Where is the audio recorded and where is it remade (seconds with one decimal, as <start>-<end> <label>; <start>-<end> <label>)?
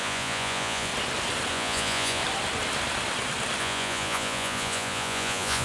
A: 0.0-0.9 remade; 0.9-1.5 recorded; 1.5-2.2 remade; 2.2-3.6 recorded; 3.6-5.6 remade